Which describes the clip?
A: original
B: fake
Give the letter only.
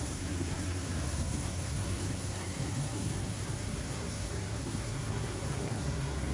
B